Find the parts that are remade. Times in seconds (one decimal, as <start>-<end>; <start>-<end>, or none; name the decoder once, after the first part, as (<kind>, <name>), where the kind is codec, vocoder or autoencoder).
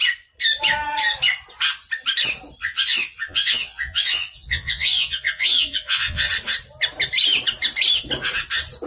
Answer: 2.6-6.3 (vocoder, Vocos)